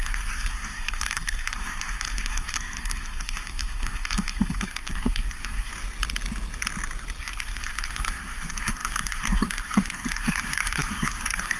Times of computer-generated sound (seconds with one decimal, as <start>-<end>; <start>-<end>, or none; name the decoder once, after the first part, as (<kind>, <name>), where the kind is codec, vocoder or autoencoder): 0.0-5.7 (codec, SNAC); 7.2-11.6